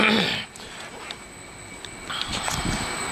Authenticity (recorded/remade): recorded